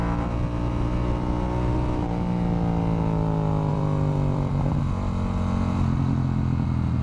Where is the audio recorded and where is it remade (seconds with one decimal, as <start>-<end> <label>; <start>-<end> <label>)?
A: 0.0-3.7 recorded; 3.7-4.8 remade; 4.8-7.0 recorded